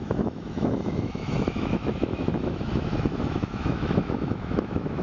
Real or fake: fake